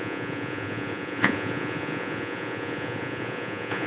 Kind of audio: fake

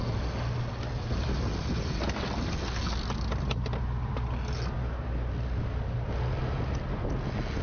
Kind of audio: real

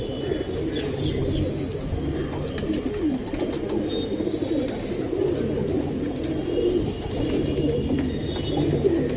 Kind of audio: real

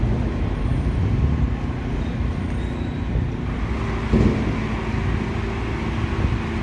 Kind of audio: real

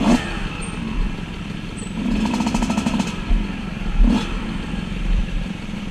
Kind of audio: fake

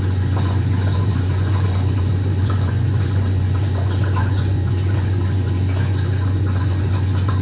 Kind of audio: fake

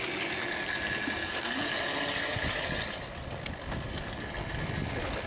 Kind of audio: real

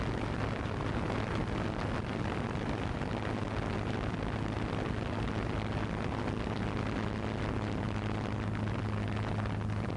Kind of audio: real